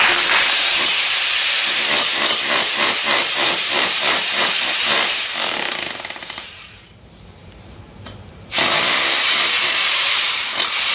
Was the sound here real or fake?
fake